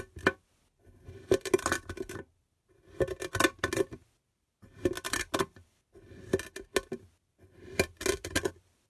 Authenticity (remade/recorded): recorded